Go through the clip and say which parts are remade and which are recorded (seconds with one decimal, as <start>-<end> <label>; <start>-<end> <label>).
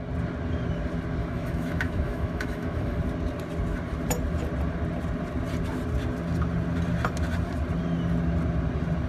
0.0-1.2 recorded; 1.2-3.0 remade; 3.0-9.1 recorded